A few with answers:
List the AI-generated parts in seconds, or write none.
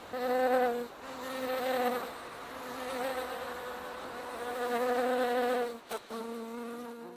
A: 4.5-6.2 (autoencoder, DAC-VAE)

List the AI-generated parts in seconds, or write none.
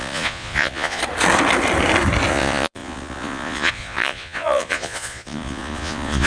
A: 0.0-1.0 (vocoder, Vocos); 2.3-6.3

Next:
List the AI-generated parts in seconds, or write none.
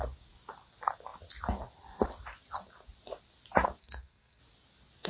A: 3.8-4.4 (codec, SNAC)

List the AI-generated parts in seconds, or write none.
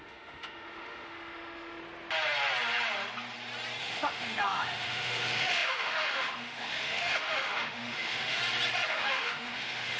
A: 0.0-1.8 (autoencoder, DAC-VAE); 3.8-8.4; 8.9-10.0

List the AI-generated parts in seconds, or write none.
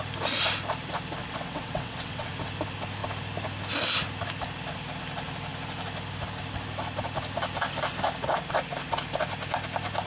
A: 1.2-2.3 (vocoder, WaveNeXt)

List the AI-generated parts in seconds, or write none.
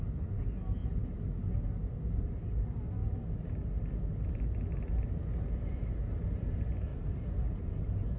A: 3.0-4.7 (vocoder, BigVGAN v2); 6.9-7.6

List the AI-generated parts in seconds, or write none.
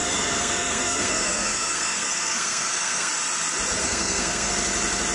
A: 0.0-3.1 (codec, SNAC); 3.8-4.5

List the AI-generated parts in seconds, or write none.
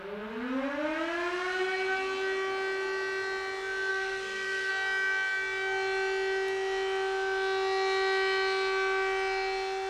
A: 3.9-4.7 (codec, SNAC)